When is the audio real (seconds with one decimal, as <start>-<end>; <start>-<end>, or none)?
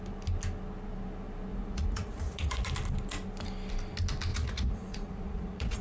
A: 0.0-1.5; 2.7-4.3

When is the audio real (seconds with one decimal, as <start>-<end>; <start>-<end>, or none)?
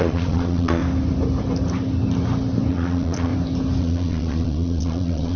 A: 0.8-2.7; 3.3-3.8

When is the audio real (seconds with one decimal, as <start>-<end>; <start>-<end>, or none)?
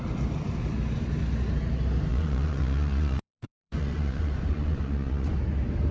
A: 0.0-2.1; 5.3-5.9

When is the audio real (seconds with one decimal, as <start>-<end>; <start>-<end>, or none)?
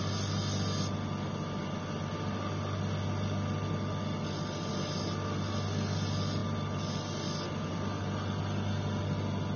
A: 0.0-9.6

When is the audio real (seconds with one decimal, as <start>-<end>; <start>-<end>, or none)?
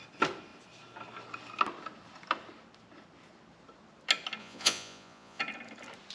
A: 0.0-4.4; 5.4-6.1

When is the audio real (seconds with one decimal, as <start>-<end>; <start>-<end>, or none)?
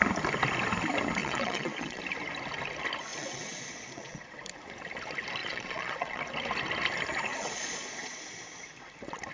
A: 0.0-1.2; 2.0-3.1; 4.3-5.4; 6.2-7.3; 8.2-9.3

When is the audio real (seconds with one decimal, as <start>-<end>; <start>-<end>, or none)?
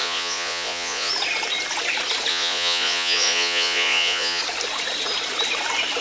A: 1.1-2.3; 4.4-6.0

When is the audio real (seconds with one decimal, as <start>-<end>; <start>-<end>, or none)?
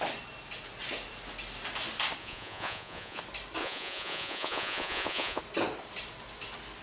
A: 0.0-2.2; 3.2-3.6; 5.4-6.8